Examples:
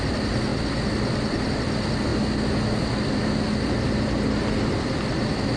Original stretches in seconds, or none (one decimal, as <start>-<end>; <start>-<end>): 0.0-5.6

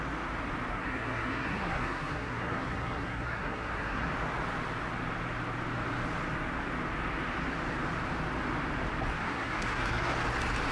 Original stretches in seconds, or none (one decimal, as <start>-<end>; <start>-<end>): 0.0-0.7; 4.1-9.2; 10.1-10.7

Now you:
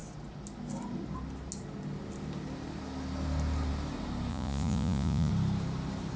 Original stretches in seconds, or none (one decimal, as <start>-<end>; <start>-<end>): 0.0-4.3; 5.3-6.2

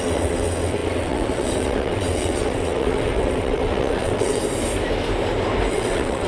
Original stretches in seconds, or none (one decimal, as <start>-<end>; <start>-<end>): 4.4-5.7

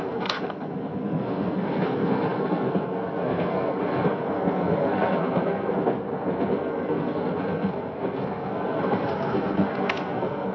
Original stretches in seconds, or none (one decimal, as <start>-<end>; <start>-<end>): none

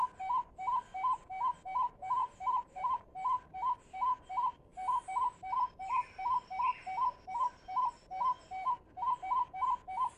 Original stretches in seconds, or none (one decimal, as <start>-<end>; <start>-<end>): 0.0-2.2; 3.0-10.2

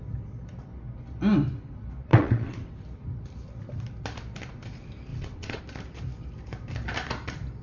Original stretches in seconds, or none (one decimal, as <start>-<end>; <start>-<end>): 0.0-2.1; 2.7-5.1; 5.6-7.6

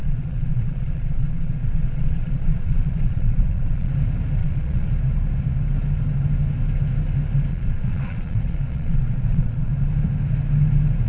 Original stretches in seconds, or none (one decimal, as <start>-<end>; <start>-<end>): 3.9-4.4; 4.9-7.5; 9.7-11.1